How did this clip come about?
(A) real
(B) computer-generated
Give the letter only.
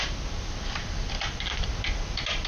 A